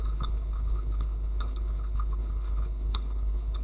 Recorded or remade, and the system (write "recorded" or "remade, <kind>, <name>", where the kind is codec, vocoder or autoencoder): remade, codec, HILCodec